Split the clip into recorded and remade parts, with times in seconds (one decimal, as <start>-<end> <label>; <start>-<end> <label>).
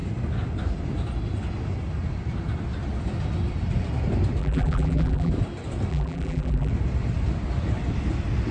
0.0-4.4 recorded; 4.4-5.3 remade; 5.3-5.9 recorded; 5.9-6.7 remade; 6.7-8.5 recorded